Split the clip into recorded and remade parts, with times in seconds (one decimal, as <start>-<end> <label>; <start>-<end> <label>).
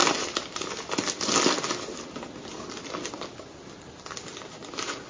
0.0-5.1 recorded